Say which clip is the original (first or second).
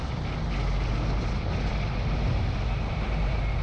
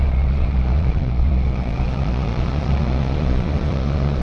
first